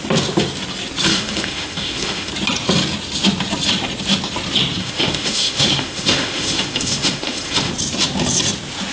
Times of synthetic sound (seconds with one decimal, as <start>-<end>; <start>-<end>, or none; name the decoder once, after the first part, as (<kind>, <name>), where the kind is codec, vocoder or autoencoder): 1.1-2.3 (autoencoder, DAC-VAE); 4.8-7.7